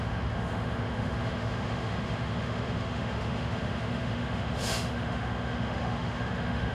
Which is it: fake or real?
fake